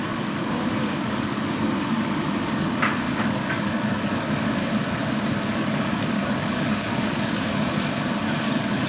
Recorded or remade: remade